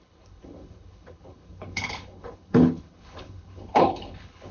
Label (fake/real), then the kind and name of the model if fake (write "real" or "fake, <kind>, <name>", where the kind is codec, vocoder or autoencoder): fake, codec, HILCodec